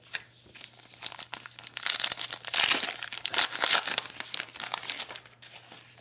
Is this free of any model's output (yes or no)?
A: yes